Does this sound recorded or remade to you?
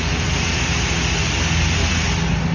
recorded